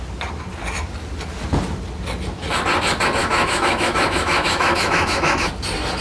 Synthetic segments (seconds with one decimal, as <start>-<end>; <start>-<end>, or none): 3.2-5.5